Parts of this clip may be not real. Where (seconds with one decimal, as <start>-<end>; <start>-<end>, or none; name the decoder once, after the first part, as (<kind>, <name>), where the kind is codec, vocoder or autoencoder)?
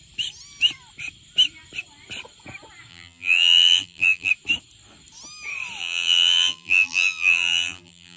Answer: 2.9-4.3 (vocoder, BigVGAN v2); 5.8-8.2